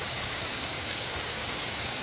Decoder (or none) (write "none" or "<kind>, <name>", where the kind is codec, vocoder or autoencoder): codec, DAC